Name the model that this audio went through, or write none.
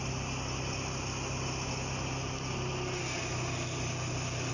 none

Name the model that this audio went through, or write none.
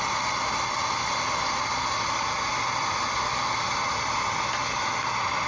none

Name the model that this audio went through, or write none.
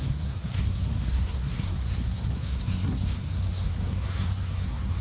codec, SNAC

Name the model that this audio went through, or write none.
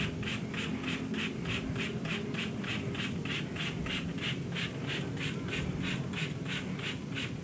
none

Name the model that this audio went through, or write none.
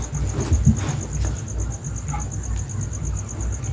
none